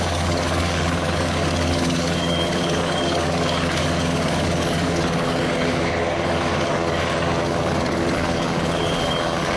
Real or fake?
fake